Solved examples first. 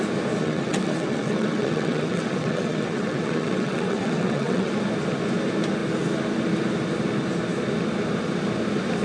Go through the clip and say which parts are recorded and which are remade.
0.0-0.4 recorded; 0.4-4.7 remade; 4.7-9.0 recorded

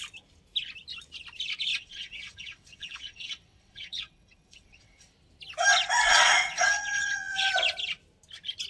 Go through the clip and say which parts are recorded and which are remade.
0.0-1.7 recorded; 1.7-5.1 remade; 5.1-6.1 recorded; 6.1-7.5 remade; 7.5-8.7 recorded

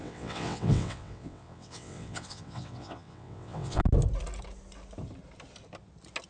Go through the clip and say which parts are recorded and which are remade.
0.0-3.8 remade; 3.8-6.3 recorded

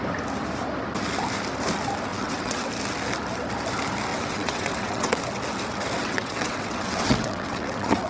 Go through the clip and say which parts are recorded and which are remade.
0.0-2.1 recorded; 2.1-2.7 remade; 2.7-4.1 recorded; 4.1-5.2 remade; 5.2-6.0 recorded; 6.0-8.1 remade

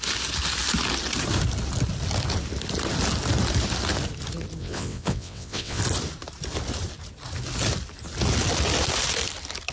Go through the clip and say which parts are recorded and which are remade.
0.0-4.6 recorded; 4.6-5.8 remade; 5.8-9.7 recorded